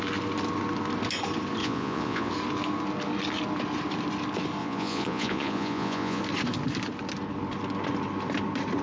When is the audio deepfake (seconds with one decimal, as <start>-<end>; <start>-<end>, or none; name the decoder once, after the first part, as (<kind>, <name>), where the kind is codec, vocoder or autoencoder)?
1.6-2.3 (vocoder, Vocos); 4.6-6.2